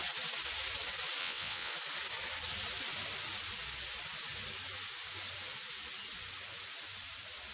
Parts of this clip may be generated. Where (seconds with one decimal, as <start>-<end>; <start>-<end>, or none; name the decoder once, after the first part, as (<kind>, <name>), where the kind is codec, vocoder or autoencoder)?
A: 1.2-1.7 (vocoder, WaveNeXt)